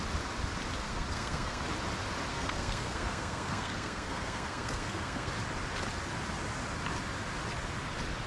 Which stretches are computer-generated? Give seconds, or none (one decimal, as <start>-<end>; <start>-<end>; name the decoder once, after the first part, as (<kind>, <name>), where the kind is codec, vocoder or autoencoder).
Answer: 0.8-1.6 (codec, SNAC); 2.3-5.3